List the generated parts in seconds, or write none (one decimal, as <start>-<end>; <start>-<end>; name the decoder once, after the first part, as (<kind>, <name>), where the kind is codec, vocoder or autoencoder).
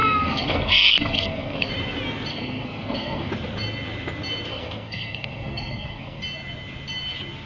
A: 0.0-1.7 (codec, SNAC); 2.3-3.3; 4.5-6.2